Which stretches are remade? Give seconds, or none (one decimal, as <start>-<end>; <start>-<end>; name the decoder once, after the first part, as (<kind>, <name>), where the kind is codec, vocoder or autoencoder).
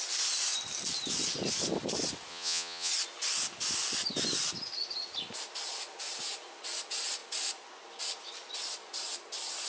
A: 2.3-2.9 (vocoder, Vocos)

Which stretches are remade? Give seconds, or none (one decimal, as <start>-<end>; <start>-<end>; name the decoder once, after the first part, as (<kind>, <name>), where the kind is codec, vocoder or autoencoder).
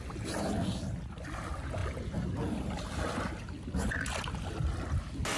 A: none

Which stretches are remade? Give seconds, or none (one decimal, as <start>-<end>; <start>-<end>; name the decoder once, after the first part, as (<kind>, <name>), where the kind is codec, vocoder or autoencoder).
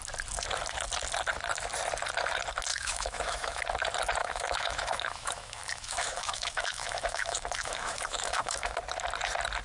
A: 2.7-3.6 (autoencoder, DAC-VAE); 4.2-8.8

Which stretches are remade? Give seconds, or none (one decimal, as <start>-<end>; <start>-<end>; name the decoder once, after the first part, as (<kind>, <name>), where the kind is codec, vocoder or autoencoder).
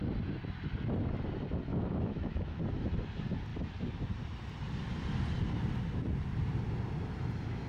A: 1.7-2.6 (autoencoder, DAC-VAE)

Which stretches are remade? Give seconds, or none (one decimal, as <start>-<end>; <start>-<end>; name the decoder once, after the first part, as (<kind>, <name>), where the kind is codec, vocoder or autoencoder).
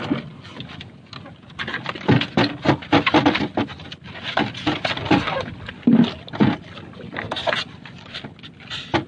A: none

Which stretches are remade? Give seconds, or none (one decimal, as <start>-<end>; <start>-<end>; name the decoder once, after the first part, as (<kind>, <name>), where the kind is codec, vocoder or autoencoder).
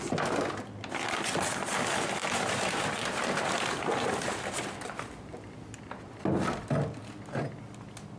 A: 2.2-5.5 (vocoder, BigVGAN v2)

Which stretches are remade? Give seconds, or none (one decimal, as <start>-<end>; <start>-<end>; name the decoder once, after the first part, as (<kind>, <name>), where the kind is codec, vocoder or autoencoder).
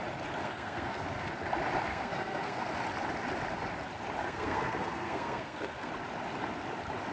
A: 0.4-1.3 (codec, SNAC); 1.9-2.6; 4.2-5.9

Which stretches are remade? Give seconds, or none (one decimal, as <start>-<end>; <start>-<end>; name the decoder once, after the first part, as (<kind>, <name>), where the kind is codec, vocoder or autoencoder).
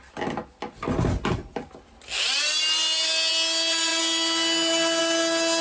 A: none